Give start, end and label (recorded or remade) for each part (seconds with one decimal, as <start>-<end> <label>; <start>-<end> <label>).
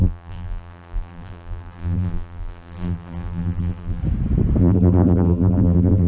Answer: 0.0-4.0 remade; 4.0-4.6 recorded; 4.6-6.1 remade